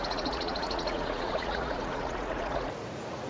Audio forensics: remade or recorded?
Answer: remade